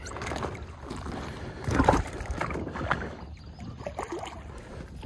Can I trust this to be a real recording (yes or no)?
yes